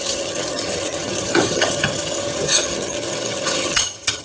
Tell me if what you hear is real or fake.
fake